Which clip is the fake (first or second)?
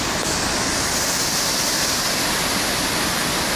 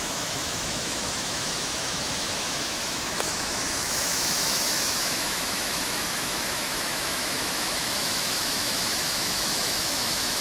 second